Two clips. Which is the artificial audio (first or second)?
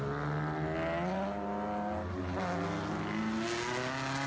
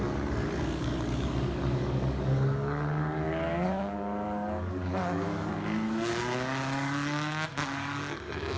second